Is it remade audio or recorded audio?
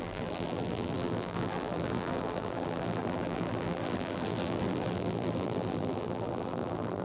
remade